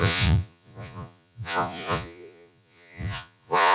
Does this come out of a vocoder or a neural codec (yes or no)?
yes